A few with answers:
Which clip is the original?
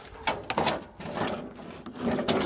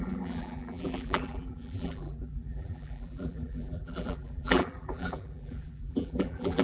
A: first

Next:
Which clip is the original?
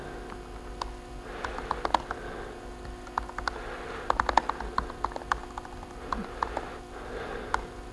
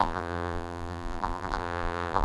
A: first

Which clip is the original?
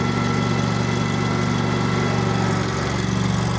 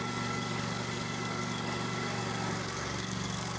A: first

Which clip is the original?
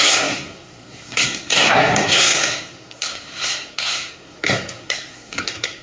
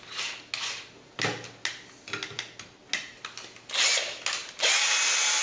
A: second